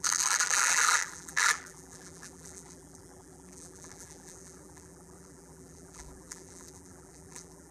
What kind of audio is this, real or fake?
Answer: fake